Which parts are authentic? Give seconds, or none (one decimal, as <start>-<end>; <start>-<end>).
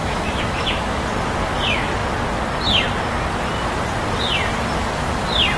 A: 1.0-5.6